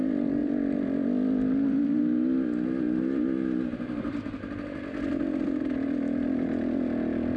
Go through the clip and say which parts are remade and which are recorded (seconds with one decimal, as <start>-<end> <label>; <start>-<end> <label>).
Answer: 0.0-0.4 recorded; 0.4-2.0 remade; 2.0-7.4 recorded